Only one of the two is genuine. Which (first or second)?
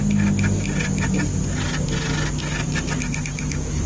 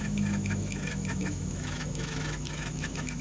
first